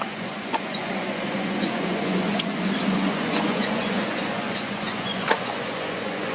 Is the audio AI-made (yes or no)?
yes